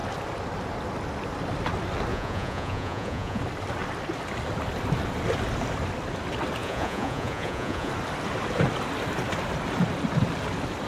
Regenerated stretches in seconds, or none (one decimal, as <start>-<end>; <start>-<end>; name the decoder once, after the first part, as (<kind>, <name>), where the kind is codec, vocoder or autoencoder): 2.1-3.4 (vocoder, Vocos); 6.6-7.9